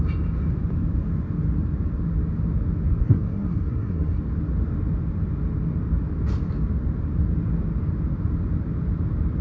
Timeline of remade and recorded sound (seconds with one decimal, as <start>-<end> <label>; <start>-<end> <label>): 0.0-3.0 recorded; 3.0-4.2 remade; 4.2-9.4 recorded